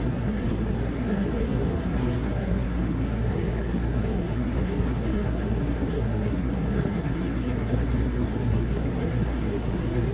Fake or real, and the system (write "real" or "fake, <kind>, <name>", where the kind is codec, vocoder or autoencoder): fake, codec, SNAC